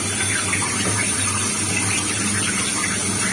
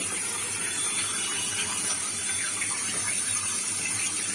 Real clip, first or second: first